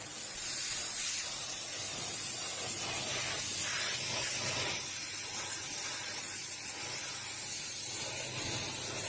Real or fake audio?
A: real